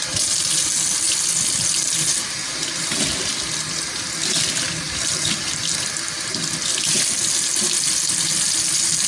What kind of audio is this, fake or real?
real